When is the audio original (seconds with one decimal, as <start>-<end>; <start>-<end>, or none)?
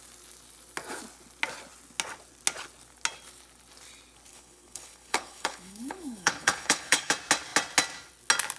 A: 0.0-4.3; 7.1-8.6